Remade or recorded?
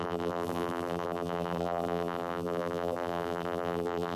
remade